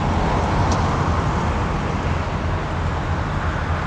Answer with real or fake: real